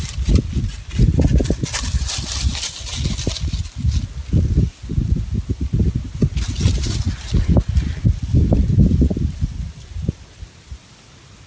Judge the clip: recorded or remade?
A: recorded